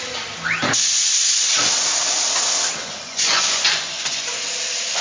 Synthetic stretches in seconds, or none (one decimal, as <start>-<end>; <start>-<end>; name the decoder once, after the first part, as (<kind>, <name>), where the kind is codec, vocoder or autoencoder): 2.8-4.4 (vocoder, Vocos)